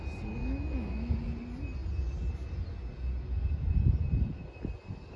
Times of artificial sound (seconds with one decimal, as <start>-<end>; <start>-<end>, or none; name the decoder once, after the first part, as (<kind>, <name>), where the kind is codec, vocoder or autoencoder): 0.4-1.1 (autoencoder, DAC-VAE)